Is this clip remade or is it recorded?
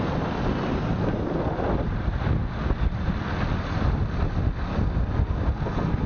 recorded